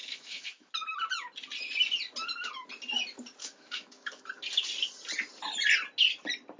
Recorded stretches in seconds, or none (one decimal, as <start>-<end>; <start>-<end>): 0.7-3.4; 4.2-6.6